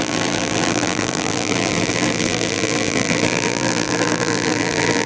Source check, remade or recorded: remade